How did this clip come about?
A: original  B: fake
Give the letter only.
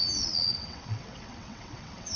B